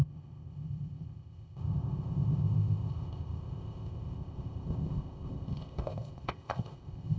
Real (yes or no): no